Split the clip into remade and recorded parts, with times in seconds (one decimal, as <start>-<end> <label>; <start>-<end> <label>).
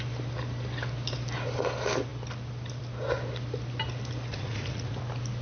0.0-4.3 recorded; 4.3-5.0 remade; 5.0-5.4 recorded